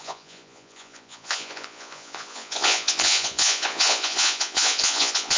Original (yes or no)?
no